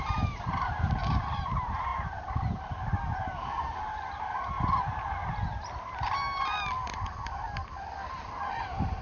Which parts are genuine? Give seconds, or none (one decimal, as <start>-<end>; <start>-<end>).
5.2-8.5